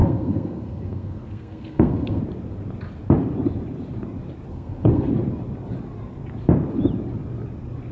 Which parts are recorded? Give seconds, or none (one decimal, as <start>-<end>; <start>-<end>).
2.2-4.5; 5.1-7.9